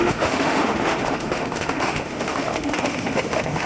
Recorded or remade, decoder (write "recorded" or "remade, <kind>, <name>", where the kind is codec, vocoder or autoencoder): remade, autoencoder, DAC-VAE